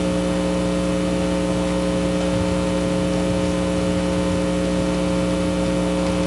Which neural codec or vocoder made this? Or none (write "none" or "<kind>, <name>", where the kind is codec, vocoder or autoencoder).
none